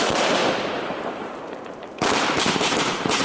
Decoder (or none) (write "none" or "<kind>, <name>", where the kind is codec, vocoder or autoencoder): vocoder, BigVGAN v2